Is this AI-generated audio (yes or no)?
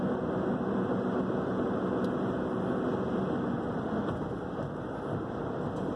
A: no